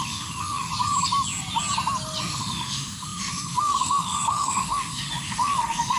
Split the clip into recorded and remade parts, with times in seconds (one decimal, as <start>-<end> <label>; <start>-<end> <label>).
0.0-0.7 remade; 0.7-2.2 recorded; 2.2-6.0 remade